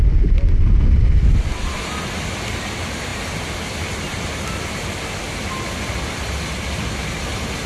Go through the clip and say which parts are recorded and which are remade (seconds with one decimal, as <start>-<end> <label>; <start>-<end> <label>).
0.0-7.7 recorded